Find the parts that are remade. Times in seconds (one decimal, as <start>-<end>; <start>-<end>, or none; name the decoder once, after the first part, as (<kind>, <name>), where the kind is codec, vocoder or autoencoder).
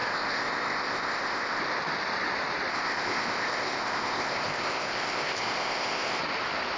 0.0-1.6 (codec, ZipCodec); 2.7-6.2